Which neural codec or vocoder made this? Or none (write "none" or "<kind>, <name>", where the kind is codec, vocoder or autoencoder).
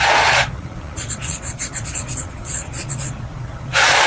vocoder, Vocos